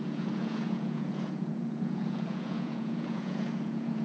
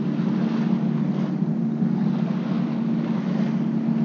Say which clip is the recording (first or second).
second